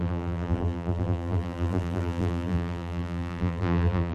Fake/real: fake